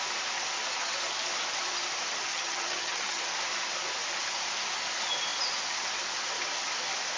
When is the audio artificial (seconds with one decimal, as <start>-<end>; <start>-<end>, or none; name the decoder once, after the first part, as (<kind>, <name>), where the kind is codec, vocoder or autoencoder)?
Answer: 2.3-3.2 (vocoder, HiFi-GAN)